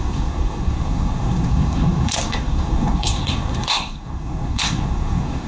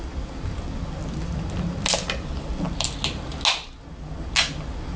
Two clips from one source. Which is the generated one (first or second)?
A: first